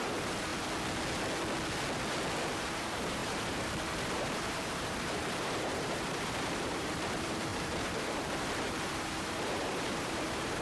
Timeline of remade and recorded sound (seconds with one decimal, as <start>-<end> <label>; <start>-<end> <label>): 0.0-0.5 remade; 0.5-2.4 recorded; 2.4-10.6 remade